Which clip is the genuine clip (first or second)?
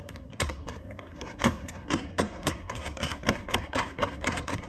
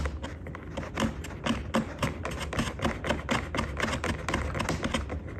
second